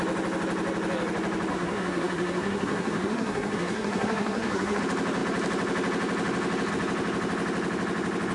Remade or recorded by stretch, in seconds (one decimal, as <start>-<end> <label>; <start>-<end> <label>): 0.0-1.5 recorded; 1.5-4.8 remade; 4.8-8.3 recorded

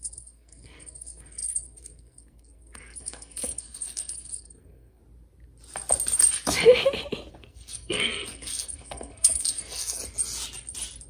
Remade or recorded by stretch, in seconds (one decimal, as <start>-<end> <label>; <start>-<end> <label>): 0.0-5.0 remade; 5.0-7.3 recorded; 7.3-10.0 remade; 10.0-11.1 recorded